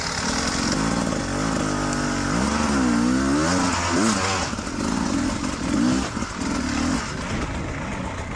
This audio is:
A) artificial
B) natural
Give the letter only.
B